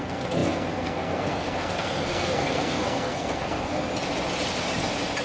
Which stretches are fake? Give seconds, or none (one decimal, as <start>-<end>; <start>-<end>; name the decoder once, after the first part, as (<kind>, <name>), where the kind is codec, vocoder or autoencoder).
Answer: 0.0-3.9 (codec, SNAC)